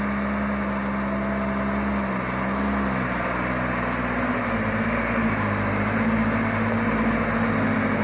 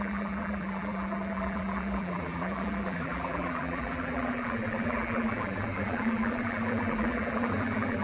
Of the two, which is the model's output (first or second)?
second